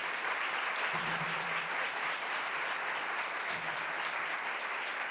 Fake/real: fake